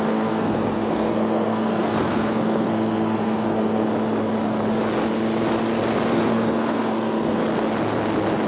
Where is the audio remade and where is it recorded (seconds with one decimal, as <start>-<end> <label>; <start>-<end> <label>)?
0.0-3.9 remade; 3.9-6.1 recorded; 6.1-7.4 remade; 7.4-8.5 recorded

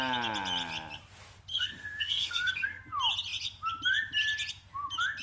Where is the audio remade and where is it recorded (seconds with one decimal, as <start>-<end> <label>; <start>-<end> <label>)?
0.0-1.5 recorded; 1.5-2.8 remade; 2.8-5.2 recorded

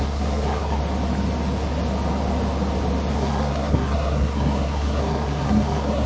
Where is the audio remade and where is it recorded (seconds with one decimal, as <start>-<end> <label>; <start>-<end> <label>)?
0.0-0.8 remade; 0.8-3.1 recorded; 3.1-6.1 remade

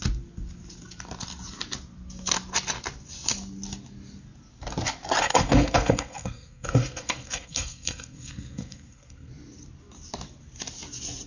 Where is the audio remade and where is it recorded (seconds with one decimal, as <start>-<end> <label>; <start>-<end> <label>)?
0.0-5.2 recorded; 5.2-9.3 remade; 9.3-11.3 recorded

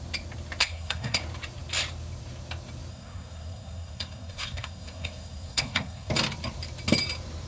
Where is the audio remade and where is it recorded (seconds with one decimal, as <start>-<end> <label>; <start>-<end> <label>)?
0.0-0.6 recorded; 0.6-1.2 remade; 1.2-2.9 recorded; 2.9-6.1 remade; 6.1-7.5 recorded

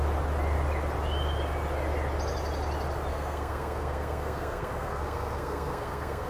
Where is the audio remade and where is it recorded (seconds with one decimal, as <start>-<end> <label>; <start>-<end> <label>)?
0.0-3.1 recorded; 3.1-6.3 remade

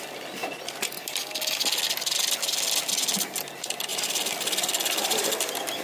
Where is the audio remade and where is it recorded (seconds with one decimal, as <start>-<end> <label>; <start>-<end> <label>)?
0.0-5.8 recorded

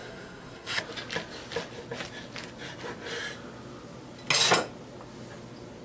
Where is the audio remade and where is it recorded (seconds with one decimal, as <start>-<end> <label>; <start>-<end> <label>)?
0.0-0.8 remade; 0.8-5.8 recorded